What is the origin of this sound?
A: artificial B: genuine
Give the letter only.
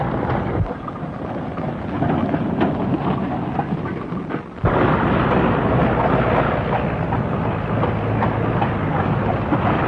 B